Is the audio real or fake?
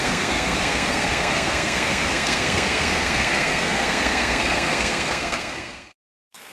fake